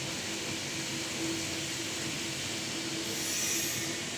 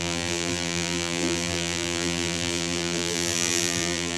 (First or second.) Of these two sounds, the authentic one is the first